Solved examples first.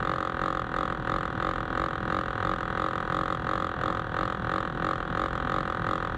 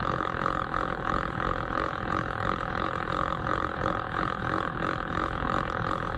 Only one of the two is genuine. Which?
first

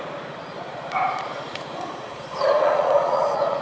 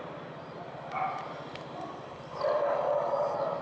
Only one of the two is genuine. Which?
second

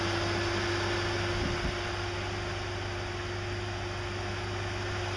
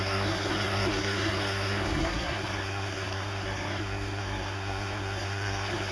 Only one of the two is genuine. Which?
first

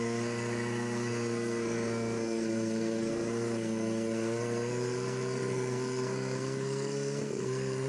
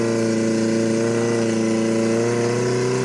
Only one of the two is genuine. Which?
second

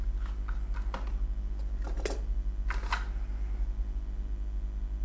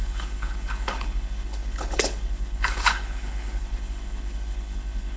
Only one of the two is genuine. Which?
first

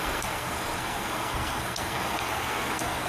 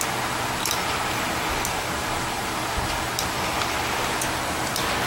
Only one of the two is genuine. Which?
second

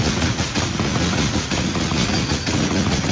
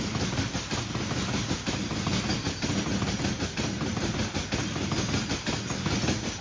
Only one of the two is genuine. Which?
second